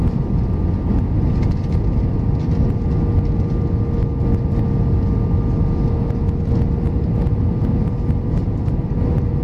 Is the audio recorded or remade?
recorded